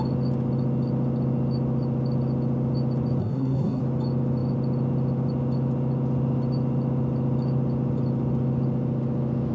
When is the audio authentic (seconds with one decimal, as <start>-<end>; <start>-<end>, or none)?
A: 0.0-3.2; 3.8-9.5